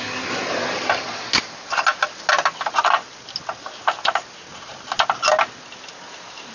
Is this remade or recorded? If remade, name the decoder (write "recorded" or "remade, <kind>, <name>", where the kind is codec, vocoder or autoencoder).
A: recorded